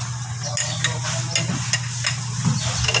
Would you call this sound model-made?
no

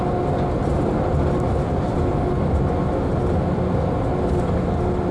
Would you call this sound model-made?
no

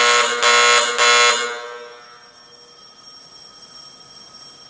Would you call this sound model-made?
no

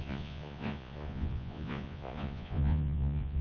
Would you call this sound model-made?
yes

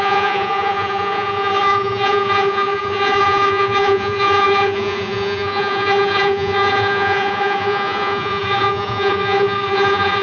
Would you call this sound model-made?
yes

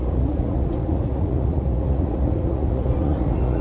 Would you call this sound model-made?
yes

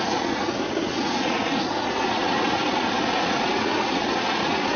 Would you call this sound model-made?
yes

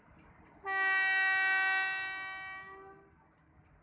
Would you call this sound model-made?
no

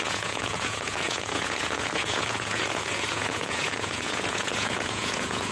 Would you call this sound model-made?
yes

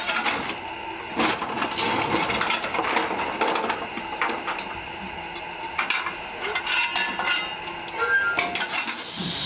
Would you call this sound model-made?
no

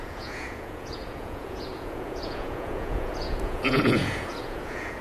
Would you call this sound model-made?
yes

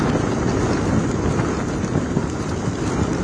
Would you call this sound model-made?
no